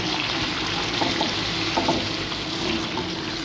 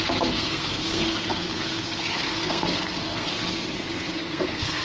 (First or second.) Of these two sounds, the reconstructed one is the second